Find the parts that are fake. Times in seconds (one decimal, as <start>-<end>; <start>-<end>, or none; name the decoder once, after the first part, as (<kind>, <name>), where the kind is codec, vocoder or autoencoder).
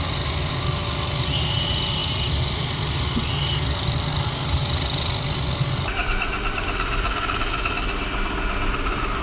none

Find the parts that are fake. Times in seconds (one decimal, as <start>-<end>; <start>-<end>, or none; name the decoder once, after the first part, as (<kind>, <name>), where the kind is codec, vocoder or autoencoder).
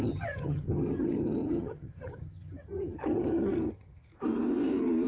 0.0-4.1 (vocoder, HiFi-GAN)